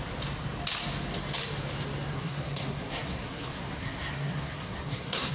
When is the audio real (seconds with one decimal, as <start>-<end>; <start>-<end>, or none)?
0.0-2.1

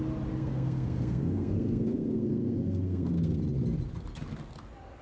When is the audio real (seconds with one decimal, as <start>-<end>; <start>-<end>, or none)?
0.0-0.4; 3.4-5.0

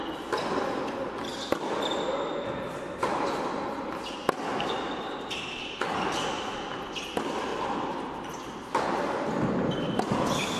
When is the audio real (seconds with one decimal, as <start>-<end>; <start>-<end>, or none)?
0.0-10.6

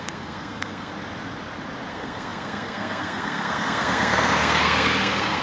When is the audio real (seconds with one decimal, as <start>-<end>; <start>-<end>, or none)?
0.9-1.9

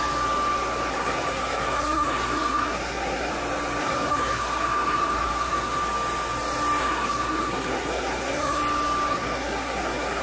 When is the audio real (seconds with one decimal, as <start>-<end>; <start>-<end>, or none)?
0.0-0.9; 3.3-3.8; 5.8-6.8; 8.6-9.1

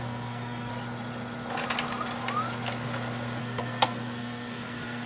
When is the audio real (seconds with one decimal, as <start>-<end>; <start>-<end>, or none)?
0.7-3.4